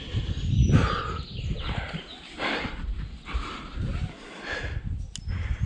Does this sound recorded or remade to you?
recorded